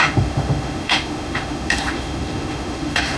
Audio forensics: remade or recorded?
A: remade